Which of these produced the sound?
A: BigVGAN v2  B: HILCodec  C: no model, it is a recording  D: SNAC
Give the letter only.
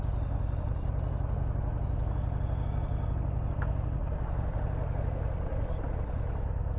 C